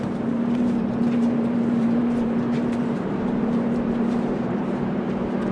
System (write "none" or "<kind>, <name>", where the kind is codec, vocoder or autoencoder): vocoder, BigVGAN v2